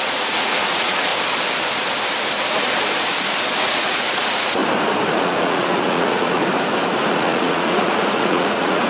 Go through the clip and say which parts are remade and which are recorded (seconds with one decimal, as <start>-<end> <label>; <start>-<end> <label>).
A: 0.0-1.1 remade; 1.1-3.6 recorded; 3.6-4.6 remade; 4.6-5.1 recorded; 5.1-6.4 remade; 6.4-7.1 recorded; 7.1-8.9 remade